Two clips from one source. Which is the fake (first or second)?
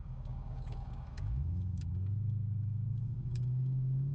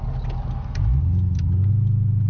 first